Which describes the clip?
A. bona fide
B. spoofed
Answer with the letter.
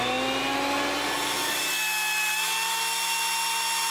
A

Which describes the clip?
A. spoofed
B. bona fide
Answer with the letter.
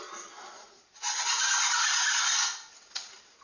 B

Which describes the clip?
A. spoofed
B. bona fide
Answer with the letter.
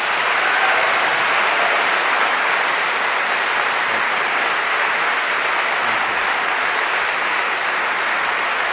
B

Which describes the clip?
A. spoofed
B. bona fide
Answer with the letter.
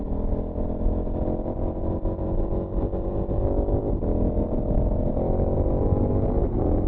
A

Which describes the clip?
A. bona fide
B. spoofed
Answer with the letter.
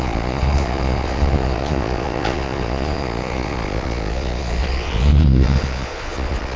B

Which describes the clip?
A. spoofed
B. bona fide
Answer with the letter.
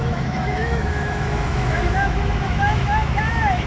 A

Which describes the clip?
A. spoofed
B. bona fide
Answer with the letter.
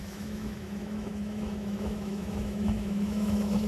A